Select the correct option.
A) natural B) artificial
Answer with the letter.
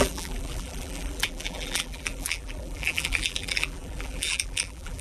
B